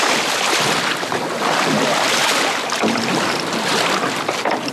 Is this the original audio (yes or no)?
yes